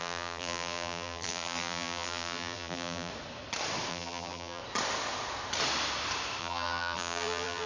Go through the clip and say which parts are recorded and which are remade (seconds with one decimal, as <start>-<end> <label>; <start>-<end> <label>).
0.0-3.1 remade; 3.1-3.9 recorded; 3.9-4.6 remade; 4.6-6.4 recorded; 6.4-7.7 remade